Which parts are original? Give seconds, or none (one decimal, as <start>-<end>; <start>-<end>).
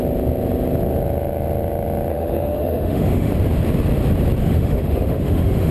0.0-2.1; 3.3-4.4